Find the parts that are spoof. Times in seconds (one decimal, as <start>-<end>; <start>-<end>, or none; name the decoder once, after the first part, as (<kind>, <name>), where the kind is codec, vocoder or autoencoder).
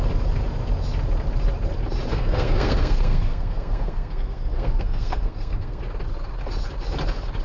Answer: 2.1-5.8 (codec, SNAC)